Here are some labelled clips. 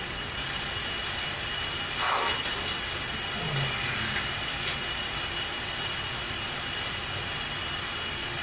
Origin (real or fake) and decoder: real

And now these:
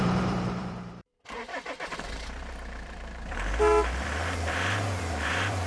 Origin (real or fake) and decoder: fake, vocoder, BigVGAN v2